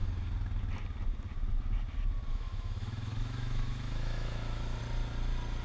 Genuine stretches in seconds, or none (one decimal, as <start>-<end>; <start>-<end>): 0.0-2.3; 4.8-5.6